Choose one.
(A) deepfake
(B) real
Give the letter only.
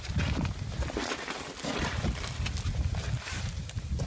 B